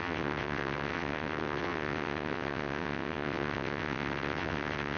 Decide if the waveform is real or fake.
fake